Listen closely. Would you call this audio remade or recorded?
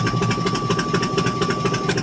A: recorded